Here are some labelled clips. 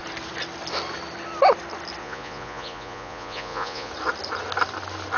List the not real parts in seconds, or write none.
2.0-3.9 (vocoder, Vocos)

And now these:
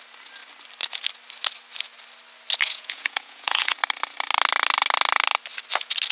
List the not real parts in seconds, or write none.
2.6-3.8 (vocoder, Vocos)

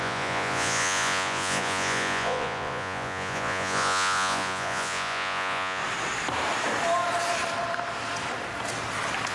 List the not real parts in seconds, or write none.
0.0-5.8 (vocoder, Vocos)

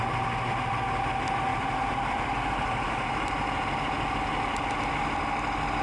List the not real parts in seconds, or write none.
none

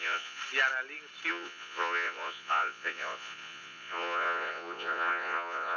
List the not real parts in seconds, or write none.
0.0-0.4 (vocoder, Vocos); 1.3-5.8

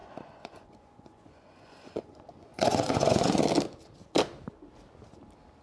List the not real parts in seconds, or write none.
0.0-3.4 (vocoder, Vocos)